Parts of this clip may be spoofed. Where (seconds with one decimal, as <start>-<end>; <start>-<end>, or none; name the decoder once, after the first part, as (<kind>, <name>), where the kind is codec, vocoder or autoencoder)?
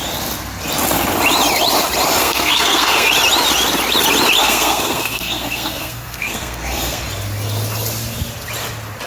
2.2-3.1 (codec, SNAC); 4.4-7.0